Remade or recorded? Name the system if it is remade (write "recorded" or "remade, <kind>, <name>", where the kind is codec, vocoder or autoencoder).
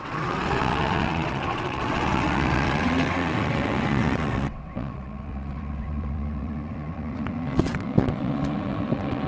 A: remade, vocoder, WaveNeXt